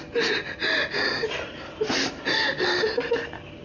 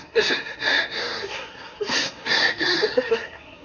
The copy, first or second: second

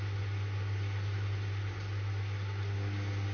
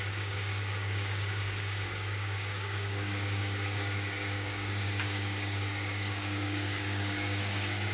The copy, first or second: second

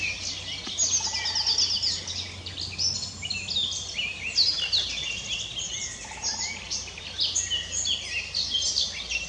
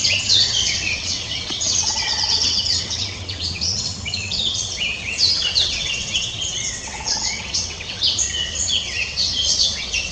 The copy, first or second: second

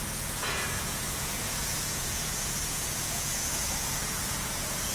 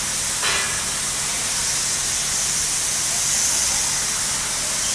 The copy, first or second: first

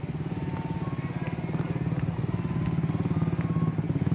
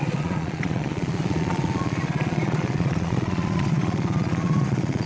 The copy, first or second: second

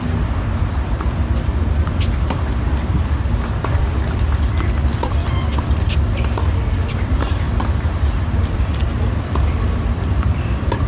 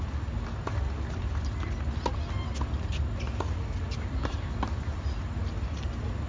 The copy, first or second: first